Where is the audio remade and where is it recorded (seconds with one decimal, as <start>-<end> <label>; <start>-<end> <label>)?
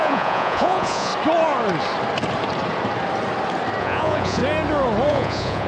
0.0-1.1 remade; 1.1-3.8 recorded; 3.8-4.4 remade; 4.4-5.1 recorded; 5.1-5.7 remade